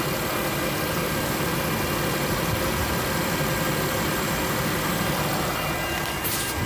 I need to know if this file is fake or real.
real